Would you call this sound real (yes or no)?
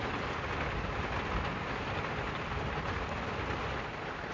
yes